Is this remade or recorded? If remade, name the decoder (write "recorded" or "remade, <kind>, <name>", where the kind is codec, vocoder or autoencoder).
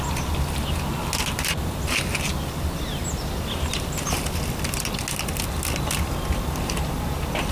recorded